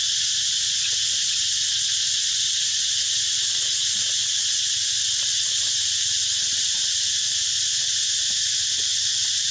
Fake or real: real